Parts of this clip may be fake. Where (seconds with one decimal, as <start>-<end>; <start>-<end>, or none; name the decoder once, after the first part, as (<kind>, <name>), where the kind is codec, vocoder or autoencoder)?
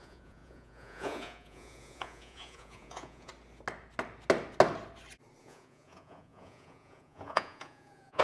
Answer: 0.0-3.3 (vocoder, Vocos); 5.4-8.2